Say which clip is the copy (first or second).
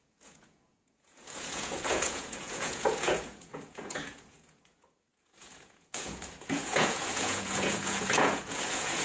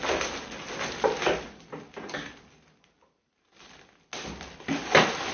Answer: first